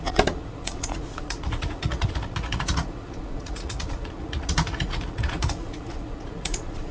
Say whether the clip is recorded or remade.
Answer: remade